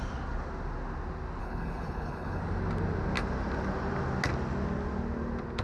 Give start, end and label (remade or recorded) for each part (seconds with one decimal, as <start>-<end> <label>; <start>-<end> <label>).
0.0-1.4 recorded; 1.4-2.4 remade; 2.4-5.6 recorded